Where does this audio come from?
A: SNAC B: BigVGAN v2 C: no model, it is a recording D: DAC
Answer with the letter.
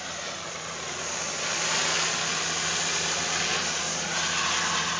C